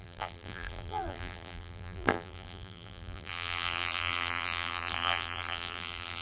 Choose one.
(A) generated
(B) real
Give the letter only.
A